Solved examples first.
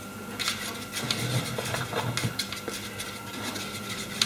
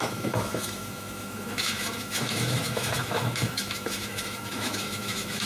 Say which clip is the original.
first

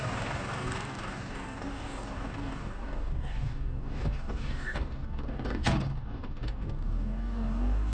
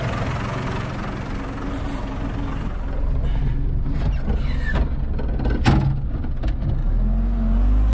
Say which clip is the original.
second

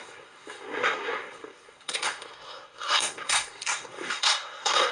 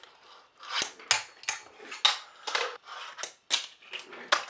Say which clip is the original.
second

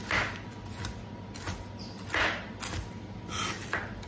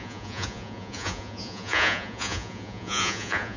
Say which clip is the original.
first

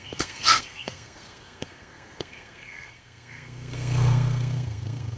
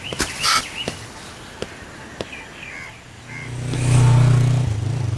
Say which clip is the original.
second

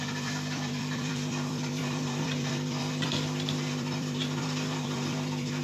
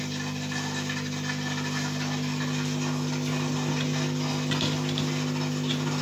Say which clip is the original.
second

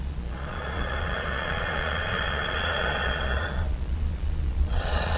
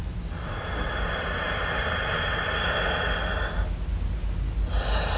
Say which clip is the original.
second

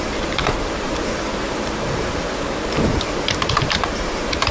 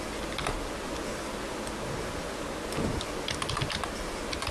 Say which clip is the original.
second